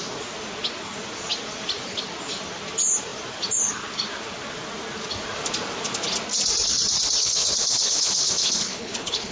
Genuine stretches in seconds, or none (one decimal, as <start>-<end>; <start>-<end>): 0.0-7.2